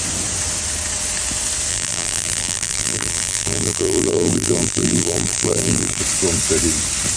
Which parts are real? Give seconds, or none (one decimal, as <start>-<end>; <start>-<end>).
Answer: 0.0-1.7; 6.0-7.2